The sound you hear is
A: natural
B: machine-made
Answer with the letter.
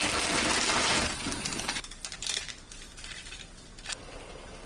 A